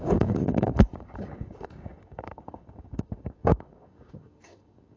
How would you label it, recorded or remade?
remade